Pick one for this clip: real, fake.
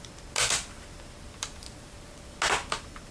real